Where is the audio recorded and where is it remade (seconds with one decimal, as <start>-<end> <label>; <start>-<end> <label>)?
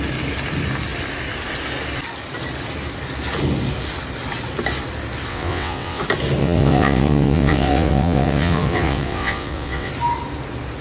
0.0-5.3 recorded; 5.3-6.0 remade; 6.0-6.4 recorded; 6.4-9.9 remade; 9.9-10.8 recorded